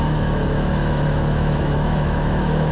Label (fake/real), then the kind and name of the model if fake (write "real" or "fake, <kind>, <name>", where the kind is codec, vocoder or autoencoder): fake, autoencoder, DAC-VAE